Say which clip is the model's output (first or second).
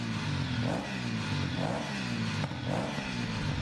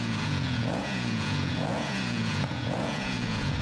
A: second